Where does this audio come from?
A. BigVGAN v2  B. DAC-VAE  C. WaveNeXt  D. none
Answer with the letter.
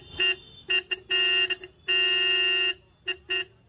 D